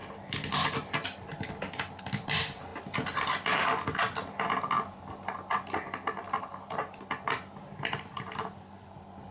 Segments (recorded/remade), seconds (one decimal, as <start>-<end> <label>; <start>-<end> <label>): 0.0-1.3 remade; 1.3-9.3 recorded